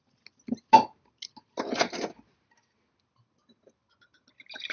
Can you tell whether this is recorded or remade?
recorded